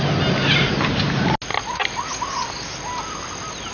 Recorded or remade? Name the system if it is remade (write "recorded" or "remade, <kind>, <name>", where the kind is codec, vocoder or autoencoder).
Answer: recorded